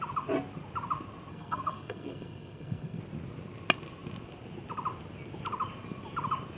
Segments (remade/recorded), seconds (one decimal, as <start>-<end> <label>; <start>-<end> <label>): 0.0-1.3 recorded; 1.3-3.0 remade; 3.0-6.6 recorded

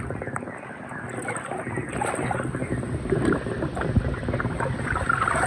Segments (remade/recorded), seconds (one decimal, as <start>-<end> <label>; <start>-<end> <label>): 0.0-5.5 recorded

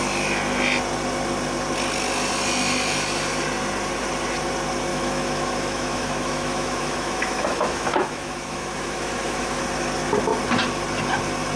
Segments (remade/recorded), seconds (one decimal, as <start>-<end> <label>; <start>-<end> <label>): 0.0-4.9 recorded; 4.9-9.6 remade; 9.6-11.6 recorded

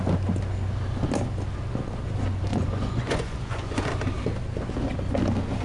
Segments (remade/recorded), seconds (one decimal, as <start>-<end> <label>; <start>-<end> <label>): 0.0-2.5 recorded; 2.5-3.9 remade; 3.9-5.6 recorded